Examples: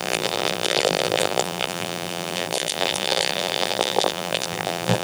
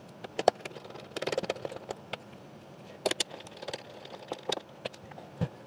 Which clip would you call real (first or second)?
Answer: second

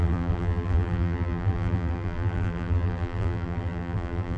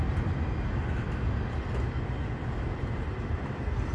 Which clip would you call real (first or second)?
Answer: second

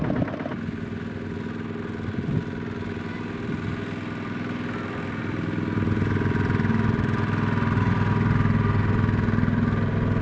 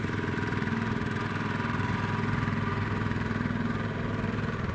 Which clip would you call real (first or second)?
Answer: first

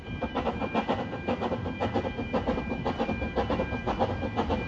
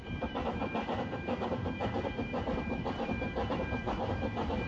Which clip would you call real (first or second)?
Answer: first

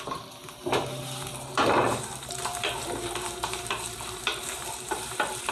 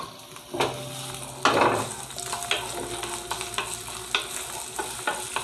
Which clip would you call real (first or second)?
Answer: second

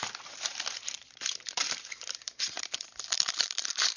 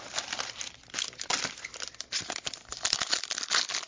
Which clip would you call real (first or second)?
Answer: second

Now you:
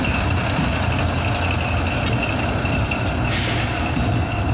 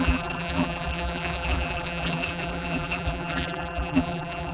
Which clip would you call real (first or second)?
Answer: first